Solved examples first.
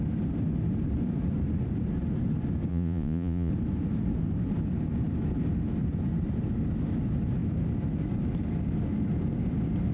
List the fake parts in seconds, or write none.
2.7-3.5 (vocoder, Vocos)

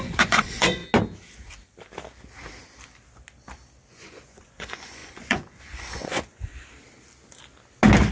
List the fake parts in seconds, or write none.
0.0-0.8 (vocoder, Vocos); 3.9-6.5

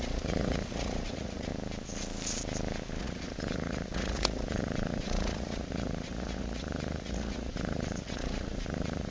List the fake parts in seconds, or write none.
0.0-1.5 (vocoder, Vocos); 3.0-9.1

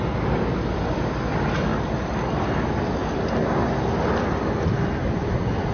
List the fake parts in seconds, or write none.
none